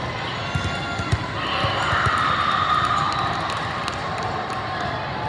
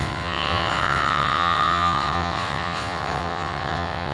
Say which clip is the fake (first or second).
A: second